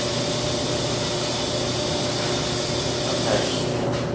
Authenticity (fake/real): real